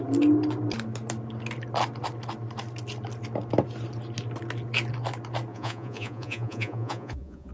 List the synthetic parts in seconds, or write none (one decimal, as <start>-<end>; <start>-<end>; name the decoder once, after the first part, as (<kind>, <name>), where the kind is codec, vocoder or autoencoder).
5.5-7.5 (vocoder, Vocos)

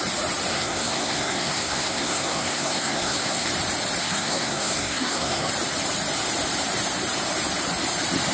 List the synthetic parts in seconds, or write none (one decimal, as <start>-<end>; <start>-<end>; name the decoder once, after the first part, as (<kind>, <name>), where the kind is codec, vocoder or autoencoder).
0.5-3.5 (codec, SNAC); 4.0-5.5